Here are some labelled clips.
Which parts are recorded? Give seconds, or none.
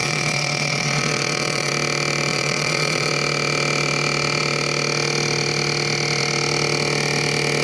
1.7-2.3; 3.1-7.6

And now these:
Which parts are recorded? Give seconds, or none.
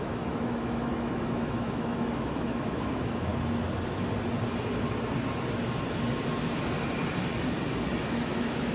3.3-8.0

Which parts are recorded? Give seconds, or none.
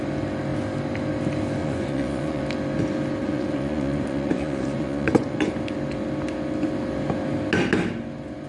0.0-1.6; 2.4-3.2; 5.5-8.5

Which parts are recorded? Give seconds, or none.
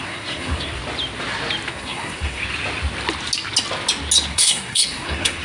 0.8-1.7; 2.4-4.3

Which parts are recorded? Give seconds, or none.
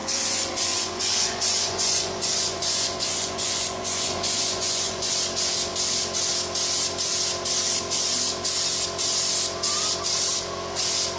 5.1-11.2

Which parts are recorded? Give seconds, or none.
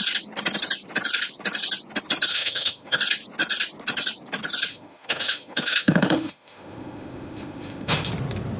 0.0-2.3; 3.0-4.7; 8.1-8.6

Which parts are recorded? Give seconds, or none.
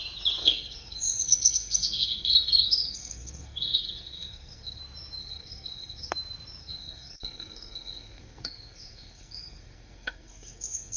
0.0-0.4; 4.8-5.2; 6.1-6.6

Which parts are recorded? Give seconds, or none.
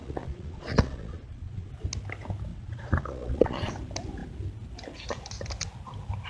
1.7-2.5; 3.7-6.3